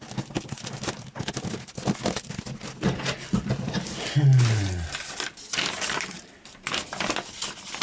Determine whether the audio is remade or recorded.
recorded